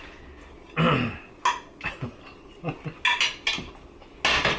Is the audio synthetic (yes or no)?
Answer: no